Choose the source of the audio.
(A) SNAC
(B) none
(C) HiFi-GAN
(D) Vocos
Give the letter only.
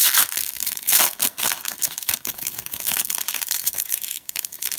A